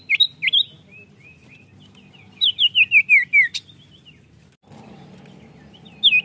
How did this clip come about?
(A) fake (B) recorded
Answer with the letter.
B